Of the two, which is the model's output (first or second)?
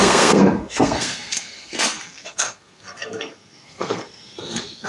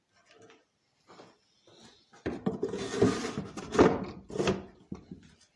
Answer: first